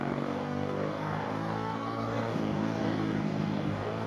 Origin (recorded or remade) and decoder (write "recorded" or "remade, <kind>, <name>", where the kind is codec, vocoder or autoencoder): remade, codec, DAC